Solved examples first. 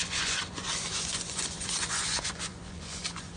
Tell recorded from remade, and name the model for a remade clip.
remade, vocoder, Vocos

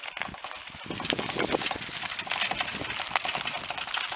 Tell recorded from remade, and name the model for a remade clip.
recorded